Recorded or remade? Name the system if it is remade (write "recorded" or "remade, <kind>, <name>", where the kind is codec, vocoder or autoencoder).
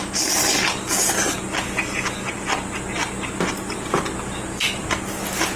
recorded